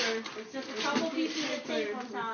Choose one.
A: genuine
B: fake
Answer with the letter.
A